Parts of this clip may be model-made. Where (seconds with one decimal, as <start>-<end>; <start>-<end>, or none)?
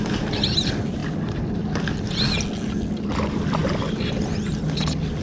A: none